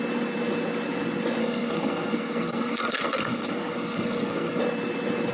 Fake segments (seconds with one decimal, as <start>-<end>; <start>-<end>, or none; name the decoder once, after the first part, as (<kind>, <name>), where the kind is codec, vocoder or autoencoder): 1.4-4.6 (codec, SNAC)